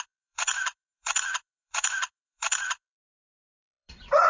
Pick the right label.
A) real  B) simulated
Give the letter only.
B